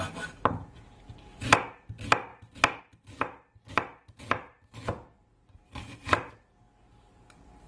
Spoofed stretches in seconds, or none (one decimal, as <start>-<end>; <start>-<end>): 5.4-6.3